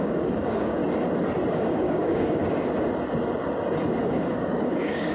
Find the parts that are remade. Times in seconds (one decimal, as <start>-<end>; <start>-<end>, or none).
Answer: 0.0-0.8; 1.5-2.4; 4.0-5.1